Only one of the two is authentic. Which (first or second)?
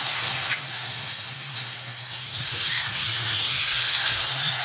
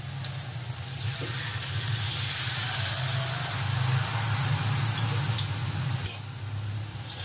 second